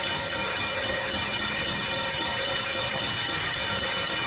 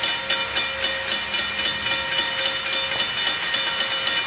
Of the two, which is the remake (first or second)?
first